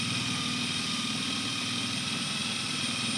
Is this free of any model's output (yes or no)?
yes